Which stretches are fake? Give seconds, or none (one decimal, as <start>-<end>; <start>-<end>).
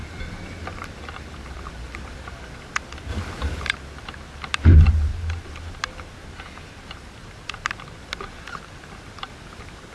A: 0.0-1.7; 3.1-3.7